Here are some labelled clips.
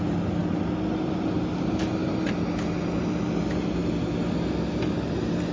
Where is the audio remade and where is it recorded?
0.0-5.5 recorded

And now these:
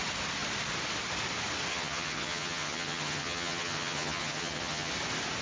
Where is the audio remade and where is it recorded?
0.0-1.7 recorded; 1.7-4.9 remade; 4.9-5.4 recorded

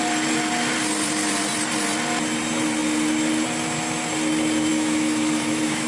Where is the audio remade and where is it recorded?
0.0-4.7 recorded; 4.7-5.9 remade

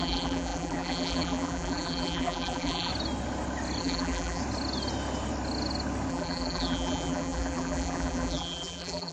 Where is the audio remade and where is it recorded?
0.0-2.9 remade; 2.9-3.8 recorded; 3.8-4.4 remade; 4.4-6.1 recorded; 6.1-9.1 remade

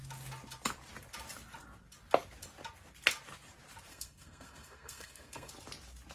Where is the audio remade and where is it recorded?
0.0-3.9 recorded; 3.9-5.5 remade; 5.5-6.1 recorded